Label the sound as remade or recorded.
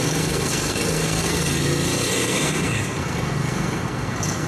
remade